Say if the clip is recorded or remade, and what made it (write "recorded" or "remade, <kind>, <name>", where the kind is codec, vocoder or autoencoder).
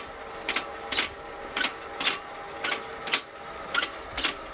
recorded